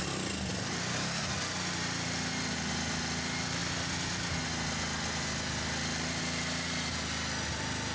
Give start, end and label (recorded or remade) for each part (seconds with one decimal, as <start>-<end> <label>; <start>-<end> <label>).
0.0-0.5 recorded; 0.5-1.4 remade; 1.4-7.9 recorded